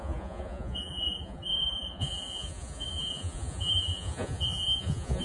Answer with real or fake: fake